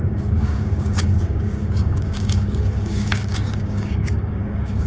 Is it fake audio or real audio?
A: fake